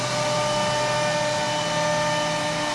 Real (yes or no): yes